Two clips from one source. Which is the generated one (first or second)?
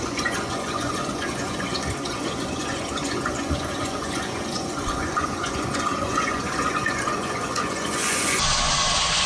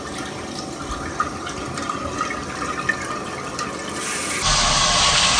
first